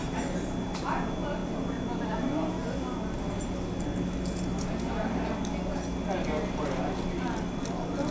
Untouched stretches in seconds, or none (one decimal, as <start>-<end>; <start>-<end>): 0.0-8.1